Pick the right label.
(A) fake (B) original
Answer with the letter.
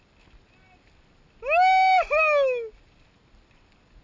B